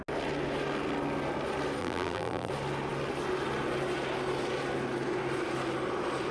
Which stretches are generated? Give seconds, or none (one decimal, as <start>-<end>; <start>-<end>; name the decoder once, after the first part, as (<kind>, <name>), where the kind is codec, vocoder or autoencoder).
1.8-2.5 (vocoder, BigVGAN v2)